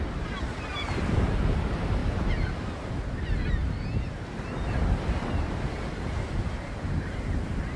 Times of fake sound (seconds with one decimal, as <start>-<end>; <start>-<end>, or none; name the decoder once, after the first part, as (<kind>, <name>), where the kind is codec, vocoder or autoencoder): none